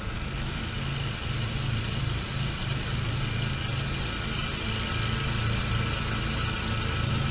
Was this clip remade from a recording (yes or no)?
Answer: no